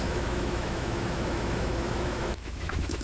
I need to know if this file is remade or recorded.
remade